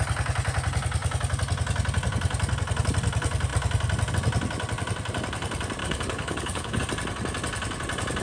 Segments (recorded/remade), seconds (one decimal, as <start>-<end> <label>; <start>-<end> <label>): 0.0-5.8 recorded; 5.8-6.8 remade; 6.8-8.2 recorded